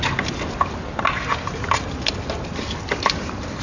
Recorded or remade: recorded